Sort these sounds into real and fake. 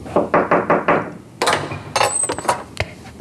real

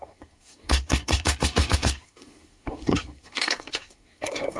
fake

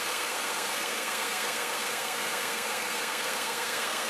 fake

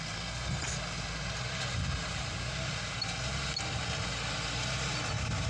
real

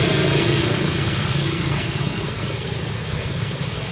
fake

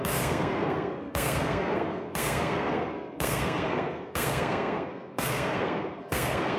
fake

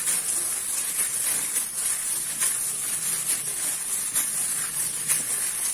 real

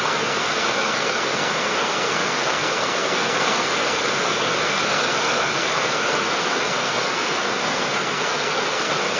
fake